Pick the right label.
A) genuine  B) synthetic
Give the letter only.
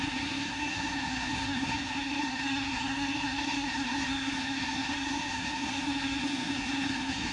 B